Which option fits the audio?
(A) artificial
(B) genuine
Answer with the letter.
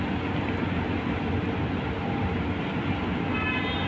B